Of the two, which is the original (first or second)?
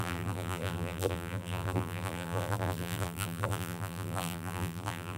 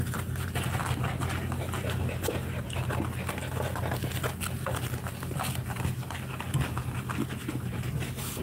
second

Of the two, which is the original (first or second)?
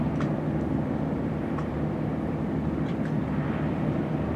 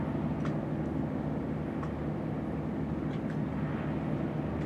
second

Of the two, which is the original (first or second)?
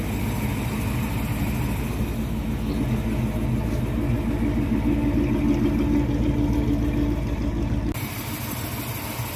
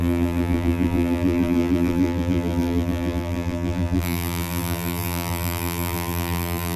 first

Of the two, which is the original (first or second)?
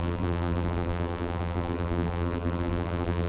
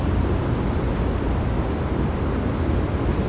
second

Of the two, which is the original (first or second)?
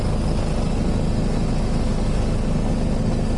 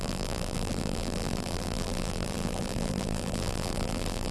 first